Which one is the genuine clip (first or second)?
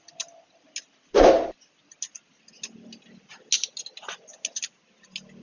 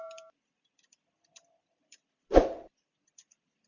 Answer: first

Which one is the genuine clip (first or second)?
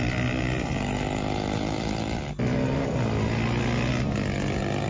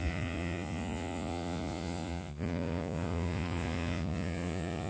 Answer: first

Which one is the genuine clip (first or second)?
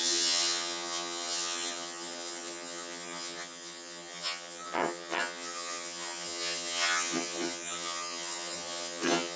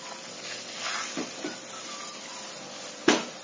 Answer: second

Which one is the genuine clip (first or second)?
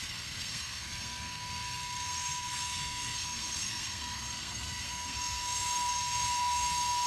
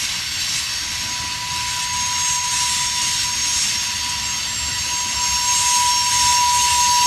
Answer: second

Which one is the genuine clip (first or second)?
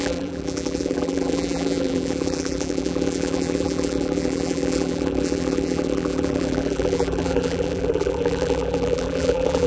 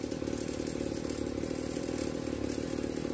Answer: second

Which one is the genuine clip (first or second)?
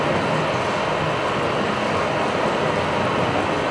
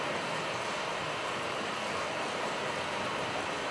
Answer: first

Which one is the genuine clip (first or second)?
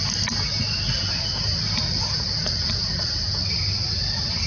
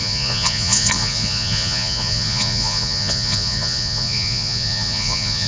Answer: first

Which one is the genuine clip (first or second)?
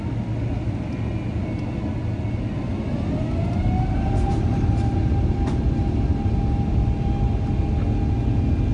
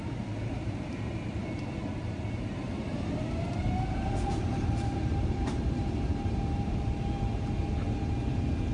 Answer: first